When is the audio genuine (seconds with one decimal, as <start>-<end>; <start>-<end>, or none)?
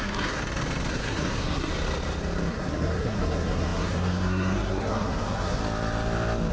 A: 0.4-0.9; 1.7-2.5; 5.6-6.5